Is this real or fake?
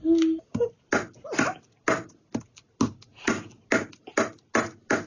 real